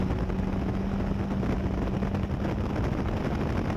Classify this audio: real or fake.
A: real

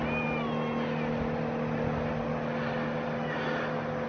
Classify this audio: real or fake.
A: real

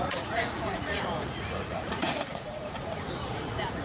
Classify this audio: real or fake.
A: fake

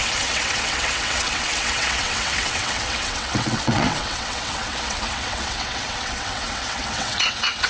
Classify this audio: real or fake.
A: fake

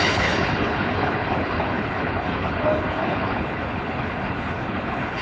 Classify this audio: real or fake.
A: fake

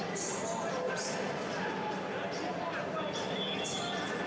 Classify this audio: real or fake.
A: real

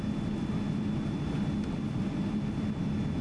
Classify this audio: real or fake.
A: real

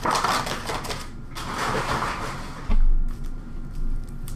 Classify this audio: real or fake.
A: real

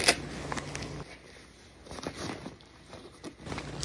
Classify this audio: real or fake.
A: real